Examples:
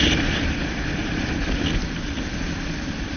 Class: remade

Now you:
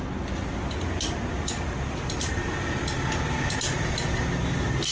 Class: recorded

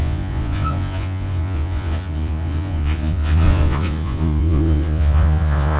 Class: remade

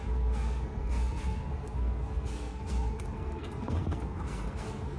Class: remade